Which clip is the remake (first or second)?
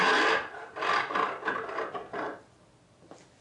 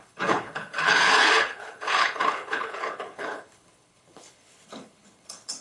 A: second